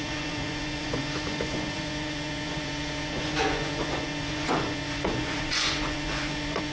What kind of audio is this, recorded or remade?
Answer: remade